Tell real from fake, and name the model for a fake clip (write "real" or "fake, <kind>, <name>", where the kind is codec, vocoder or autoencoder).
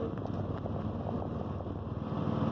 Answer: real